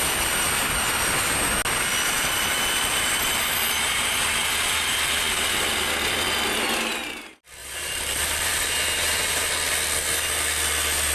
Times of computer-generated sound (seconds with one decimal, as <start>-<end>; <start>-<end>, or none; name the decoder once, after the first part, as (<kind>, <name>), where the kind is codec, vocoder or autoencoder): 7.6-9.5 (vocoder, BigVGAN v2)